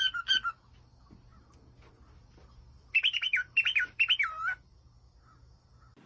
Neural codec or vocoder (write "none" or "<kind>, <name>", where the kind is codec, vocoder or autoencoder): none